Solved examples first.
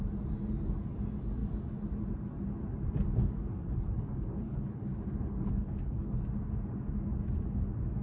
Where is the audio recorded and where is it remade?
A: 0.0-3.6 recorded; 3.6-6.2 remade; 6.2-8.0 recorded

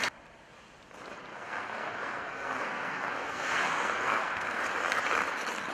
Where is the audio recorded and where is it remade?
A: 0.0-1.3 recorded; 1.3-4.6 remade; 4.6-5.7 recorded

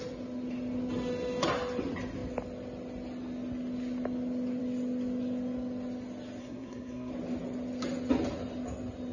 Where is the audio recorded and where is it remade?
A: 0.0-6.4 recorded; 6.4-7.1 remade; 7.1-9.1 recorded

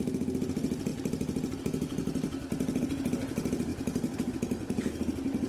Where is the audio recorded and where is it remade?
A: 0.0-5.5 recorded